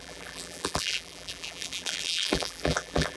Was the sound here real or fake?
fake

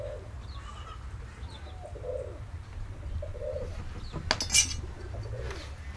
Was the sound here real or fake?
real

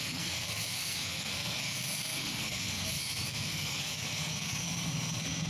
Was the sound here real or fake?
fake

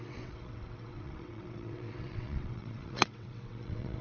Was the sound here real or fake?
fake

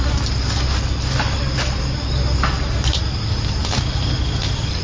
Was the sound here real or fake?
real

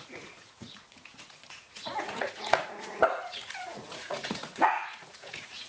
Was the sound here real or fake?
fake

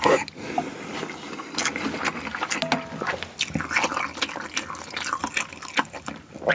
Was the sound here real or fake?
real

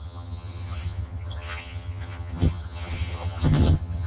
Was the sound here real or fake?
fake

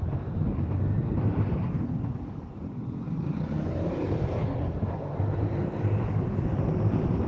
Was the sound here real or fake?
fake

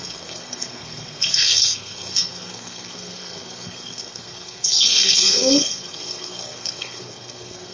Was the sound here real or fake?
fake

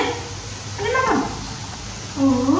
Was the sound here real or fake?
real